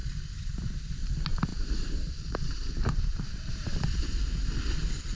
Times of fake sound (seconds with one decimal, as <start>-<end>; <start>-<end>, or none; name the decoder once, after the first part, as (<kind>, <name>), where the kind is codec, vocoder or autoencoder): 0.0-1.1 (vocoder, BigVGAN v2); 1.5-4.0